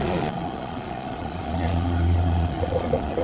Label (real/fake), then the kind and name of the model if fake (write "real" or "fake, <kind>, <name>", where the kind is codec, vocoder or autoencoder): fake, vocoder, Vocos